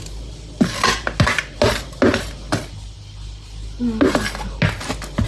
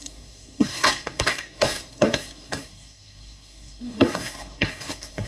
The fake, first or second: second